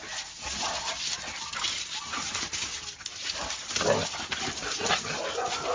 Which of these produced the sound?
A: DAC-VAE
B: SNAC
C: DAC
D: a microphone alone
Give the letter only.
D